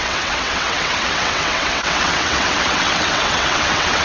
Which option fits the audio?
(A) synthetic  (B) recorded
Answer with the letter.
A